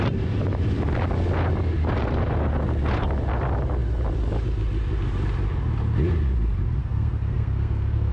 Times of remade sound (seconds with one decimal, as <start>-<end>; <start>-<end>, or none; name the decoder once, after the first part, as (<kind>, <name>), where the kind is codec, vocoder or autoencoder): 6.8-8.1 (codec, SNAC)